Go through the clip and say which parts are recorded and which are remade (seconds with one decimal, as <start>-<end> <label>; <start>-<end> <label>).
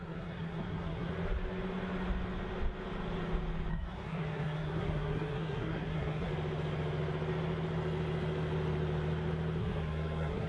0.0-1.1 remade; 1.1-3.7 recorded; 3.7-6.3 remade; 6.3-9.6 recorded; 9.6-10.5 remade